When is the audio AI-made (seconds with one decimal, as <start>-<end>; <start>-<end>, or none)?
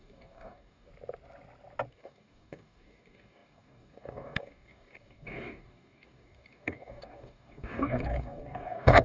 0.0-0.9; 1.9-9.0